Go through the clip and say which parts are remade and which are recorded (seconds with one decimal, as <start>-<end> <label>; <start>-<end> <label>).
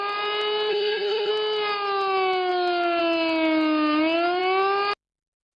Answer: 0.0-0.7 recorded; 0.7-1.3 remade; 1.3-5.6 recorded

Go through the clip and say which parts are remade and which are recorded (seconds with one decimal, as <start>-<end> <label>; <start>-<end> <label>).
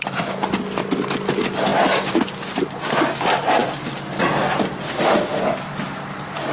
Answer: 0.0-4.8 recorded; 4.8-5.4 remade; 5.4-6.5 recorded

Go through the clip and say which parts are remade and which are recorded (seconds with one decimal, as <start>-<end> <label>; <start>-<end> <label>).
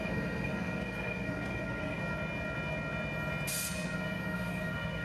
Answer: 0.0-2.0 remade; 2.0-3.5 recorded; 3.5-5.0 remade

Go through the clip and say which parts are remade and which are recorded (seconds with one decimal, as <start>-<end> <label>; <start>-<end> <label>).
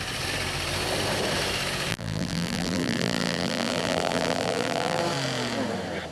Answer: 0.0-1.9 recorded; 1.9-5.0 remade; 5.0-6.1 recorded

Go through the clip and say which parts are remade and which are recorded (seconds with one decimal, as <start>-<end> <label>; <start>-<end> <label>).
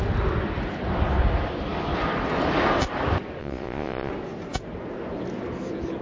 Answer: 0.0-3.4 recorded; 3.4-4.1 remade; 4.1-6.0 recorded